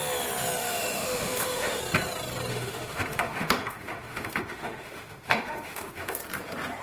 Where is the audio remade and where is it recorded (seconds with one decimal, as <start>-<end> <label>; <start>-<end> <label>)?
0.0-0.6 recorded; 0.6-1.8 remade; 1.8-2.5 recorded; 2.5-6.2 remade; 6.2-6.8 recorded